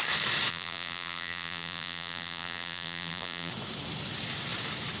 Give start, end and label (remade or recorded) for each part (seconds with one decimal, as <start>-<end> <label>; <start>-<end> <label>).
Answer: 0.0-0.5 recorded; 0.5-3.5 remade; 3.5-5.0 recorded